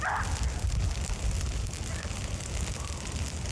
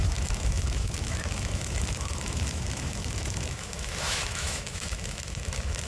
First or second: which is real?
first